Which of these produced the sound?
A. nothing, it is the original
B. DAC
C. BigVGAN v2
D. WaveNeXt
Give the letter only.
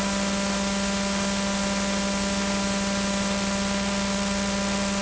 A